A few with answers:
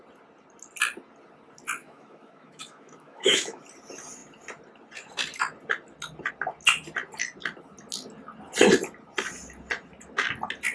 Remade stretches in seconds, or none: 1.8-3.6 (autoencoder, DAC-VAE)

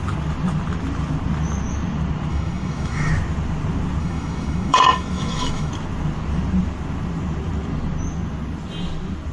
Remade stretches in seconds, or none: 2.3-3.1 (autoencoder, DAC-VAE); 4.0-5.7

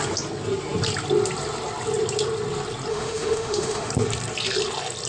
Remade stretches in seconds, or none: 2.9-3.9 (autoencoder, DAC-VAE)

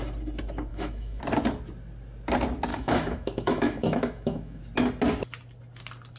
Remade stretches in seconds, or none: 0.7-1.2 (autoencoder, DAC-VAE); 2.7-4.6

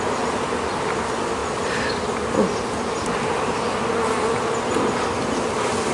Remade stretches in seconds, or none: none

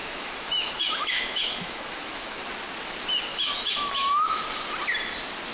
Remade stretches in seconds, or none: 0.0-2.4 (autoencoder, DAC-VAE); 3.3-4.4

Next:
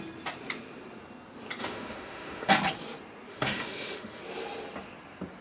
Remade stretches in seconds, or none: 1.6-2.5 (autoencoder, DAC-VAE); 3.3-4.2

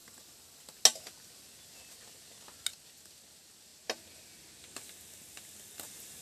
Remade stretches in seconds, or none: none